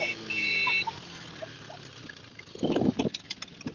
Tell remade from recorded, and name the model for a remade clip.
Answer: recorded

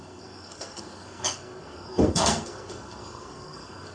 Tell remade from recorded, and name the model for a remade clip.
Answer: remade, codec, SNAC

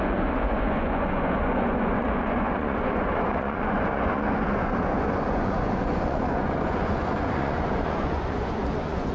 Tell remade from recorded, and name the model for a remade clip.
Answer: remade, vocoder, Vocos